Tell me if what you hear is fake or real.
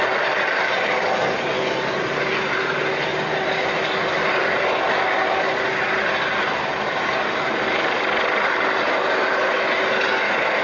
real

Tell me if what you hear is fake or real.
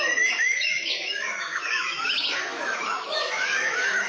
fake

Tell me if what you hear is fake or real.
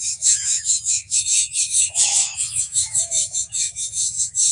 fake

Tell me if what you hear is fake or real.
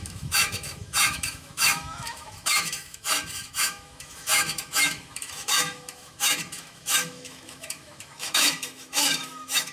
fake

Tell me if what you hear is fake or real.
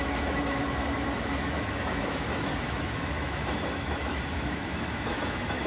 fake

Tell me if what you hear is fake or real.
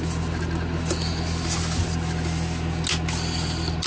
real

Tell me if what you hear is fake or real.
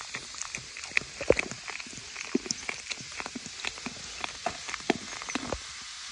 real